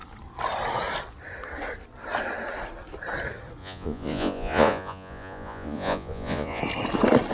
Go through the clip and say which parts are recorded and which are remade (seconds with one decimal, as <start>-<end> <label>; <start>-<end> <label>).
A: 0.0-3.6 recorded; 3.6-6.6 remade; 6.6-7.3 recorded